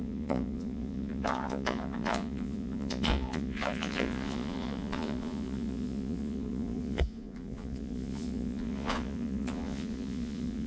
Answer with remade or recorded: remade